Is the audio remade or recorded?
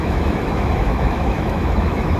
remade